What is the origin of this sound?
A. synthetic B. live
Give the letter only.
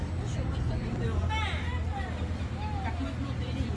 B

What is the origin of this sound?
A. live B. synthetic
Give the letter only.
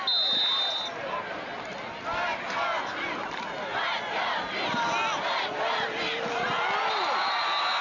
A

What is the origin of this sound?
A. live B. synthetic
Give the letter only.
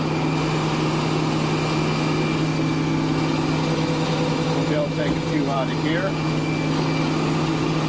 A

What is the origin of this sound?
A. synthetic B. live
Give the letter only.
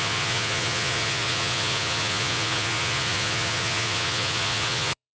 A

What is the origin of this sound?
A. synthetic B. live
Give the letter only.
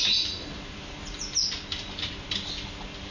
B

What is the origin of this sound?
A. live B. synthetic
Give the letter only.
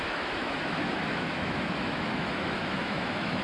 B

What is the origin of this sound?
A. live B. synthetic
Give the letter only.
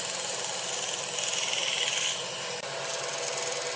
A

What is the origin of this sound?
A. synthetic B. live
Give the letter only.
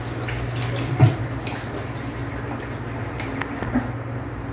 B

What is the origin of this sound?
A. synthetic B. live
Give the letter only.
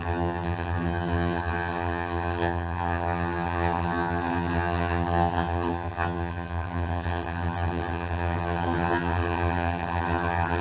A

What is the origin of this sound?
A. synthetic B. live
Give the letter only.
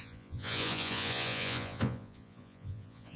A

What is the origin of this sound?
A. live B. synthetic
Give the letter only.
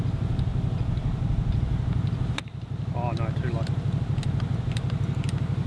A